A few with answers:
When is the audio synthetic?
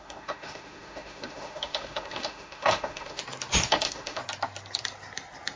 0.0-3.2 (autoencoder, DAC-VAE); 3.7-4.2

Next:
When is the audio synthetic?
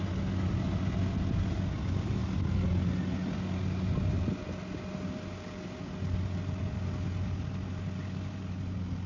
none